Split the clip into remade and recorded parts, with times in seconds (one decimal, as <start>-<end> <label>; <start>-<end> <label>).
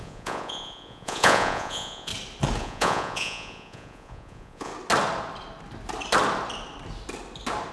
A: 0.0-2.1 remade; 2.1-2.6 recorded; 2.6-4.7 remade; 4.7-7.7 recorded